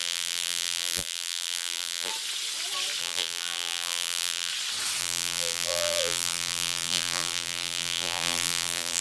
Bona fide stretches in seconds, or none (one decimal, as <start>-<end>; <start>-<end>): 2.1-3.0; 4.5-5.0